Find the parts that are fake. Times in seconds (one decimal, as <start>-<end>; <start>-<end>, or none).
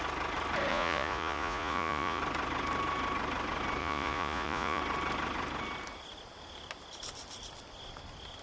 0.7-2.2; 3.8-4.8